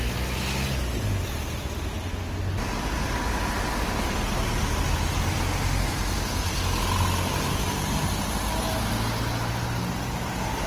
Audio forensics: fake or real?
real